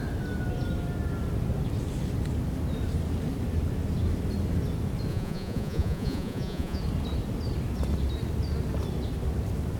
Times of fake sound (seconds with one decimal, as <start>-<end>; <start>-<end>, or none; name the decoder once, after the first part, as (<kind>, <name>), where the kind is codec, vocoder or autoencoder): 5.1-6.8 (vocoder, Vocos)